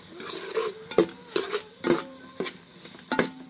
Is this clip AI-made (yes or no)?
no